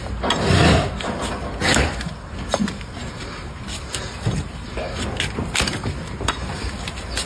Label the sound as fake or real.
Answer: real